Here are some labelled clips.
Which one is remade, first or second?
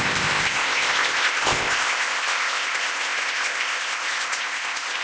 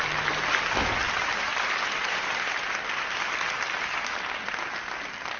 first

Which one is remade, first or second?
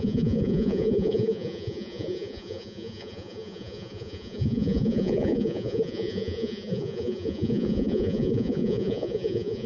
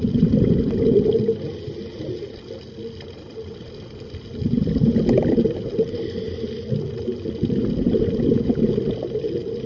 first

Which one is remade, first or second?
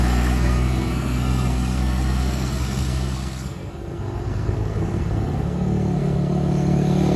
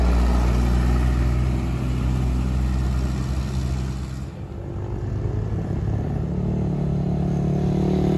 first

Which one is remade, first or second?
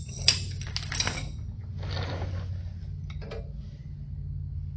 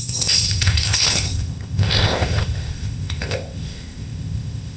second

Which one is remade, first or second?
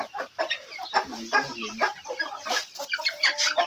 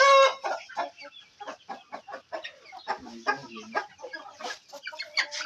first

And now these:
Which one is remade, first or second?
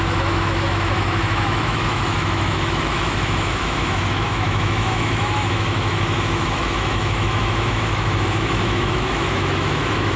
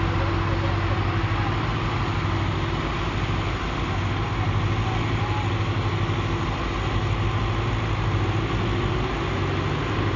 first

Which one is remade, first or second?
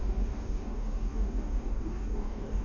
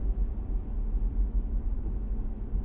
first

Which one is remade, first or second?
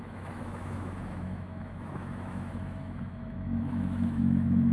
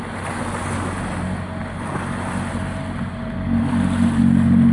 first